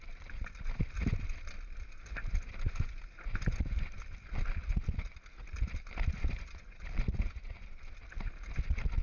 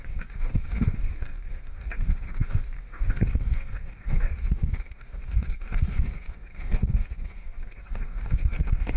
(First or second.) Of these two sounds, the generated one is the second